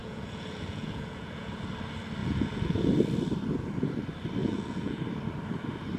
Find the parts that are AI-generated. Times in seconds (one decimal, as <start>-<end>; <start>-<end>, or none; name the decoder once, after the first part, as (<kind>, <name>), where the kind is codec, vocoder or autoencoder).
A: 0.0-1.7 (vocoder, Vocos); 2.2-2.9; 4.4-5.0